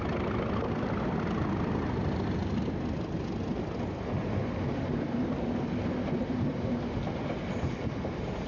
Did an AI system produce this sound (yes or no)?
no